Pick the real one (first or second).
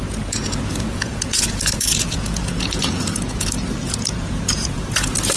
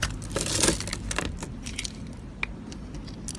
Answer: second